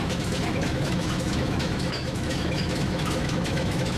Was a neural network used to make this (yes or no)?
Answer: yes